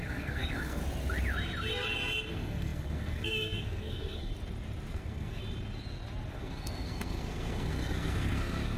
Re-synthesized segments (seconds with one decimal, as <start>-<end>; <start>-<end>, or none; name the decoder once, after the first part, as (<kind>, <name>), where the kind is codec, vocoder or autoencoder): 0.0-0.8 (codec, SNAC); 2.3-4.3; 4.9-5.4; 6.3-8.8